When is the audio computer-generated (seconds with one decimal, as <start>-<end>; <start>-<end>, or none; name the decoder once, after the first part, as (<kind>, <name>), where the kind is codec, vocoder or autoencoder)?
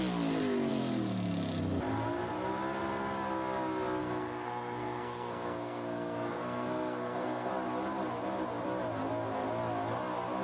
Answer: 4.0-7.5 (codec, SNAC)